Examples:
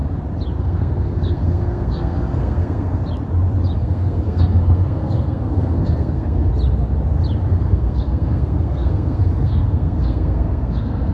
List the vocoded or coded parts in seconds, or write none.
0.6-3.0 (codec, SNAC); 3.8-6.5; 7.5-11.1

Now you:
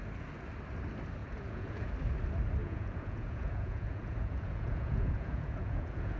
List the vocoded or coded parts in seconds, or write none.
1.2-1.9 (vocoder, Vocos); 2.6-6.2